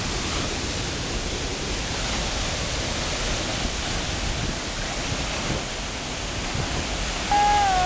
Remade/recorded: recorded